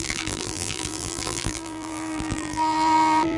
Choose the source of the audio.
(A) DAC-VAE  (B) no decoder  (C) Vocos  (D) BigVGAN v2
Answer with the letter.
D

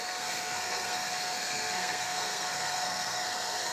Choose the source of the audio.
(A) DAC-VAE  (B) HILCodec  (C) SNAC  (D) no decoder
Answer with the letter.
C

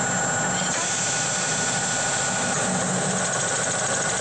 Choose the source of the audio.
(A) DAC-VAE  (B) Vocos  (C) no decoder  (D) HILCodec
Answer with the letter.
C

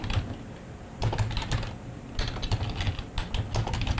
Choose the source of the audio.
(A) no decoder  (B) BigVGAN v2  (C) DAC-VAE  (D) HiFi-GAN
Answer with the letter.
A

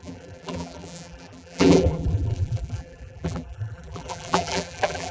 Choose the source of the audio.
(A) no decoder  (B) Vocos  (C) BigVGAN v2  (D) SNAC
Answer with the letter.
C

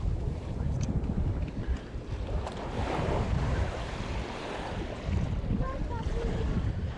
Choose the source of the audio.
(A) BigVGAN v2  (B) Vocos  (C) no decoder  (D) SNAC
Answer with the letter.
A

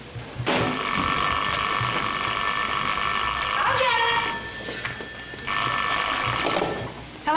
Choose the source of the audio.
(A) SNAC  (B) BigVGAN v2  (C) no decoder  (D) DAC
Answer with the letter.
C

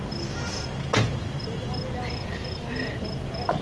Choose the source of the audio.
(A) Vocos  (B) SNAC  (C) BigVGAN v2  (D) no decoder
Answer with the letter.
D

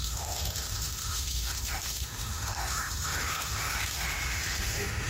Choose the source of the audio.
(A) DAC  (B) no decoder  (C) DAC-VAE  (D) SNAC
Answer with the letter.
C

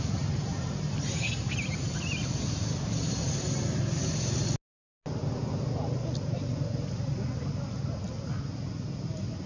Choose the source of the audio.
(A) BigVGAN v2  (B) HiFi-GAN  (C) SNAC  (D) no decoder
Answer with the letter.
D